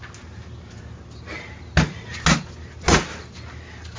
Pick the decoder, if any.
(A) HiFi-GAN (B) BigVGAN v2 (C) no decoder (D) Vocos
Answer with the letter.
C